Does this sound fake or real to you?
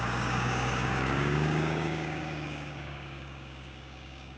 fake